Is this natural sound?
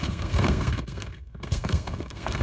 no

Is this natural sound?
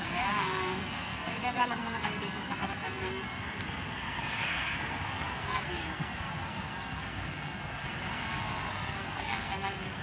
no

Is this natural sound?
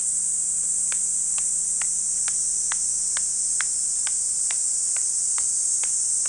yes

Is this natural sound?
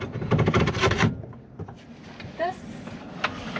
yes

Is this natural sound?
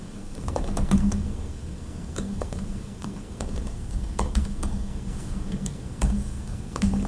no